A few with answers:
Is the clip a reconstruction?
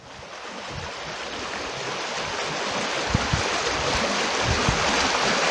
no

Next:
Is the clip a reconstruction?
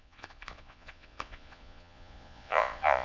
yes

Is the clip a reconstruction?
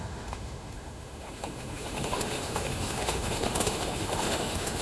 yes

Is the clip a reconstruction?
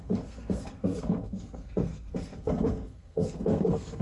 yes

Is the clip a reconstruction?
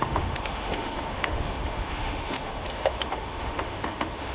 yes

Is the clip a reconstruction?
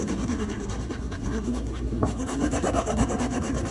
yes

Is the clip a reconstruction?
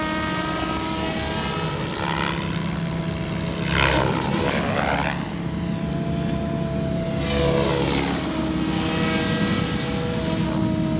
no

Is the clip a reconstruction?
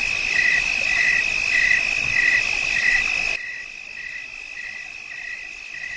no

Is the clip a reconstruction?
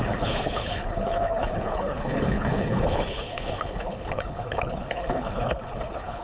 yes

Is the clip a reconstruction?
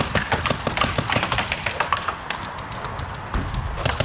no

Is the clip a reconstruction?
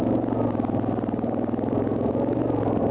no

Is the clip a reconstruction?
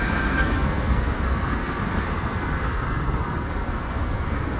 yes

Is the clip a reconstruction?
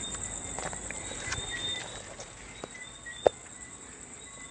no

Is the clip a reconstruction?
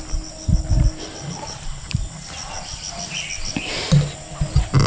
no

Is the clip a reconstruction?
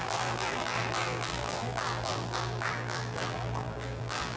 yes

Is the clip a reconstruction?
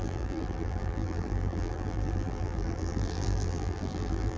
yes